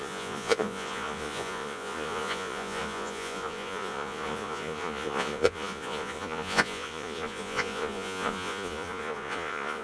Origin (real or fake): fake